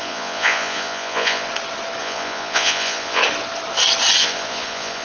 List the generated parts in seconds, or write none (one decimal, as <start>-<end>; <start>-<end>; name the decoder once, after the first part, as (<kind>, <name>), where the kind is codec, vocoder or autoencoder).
0.0-1.5 (vocoder, Vocos); 2.0-3.2; 4.2-5.0